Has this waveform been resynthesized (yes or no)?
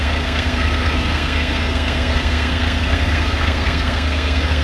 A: yes